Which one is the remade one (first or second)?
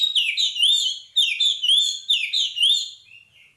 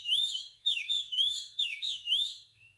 second